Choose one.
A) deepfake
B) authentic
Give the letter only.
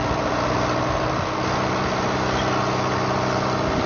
B